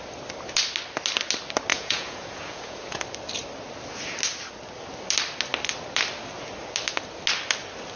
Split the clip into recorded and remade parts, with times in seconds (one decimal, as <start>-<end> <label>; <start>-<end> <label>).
0.0-1.7 recorded; 1.7-3.0 remade; 3.0-8.0 recorded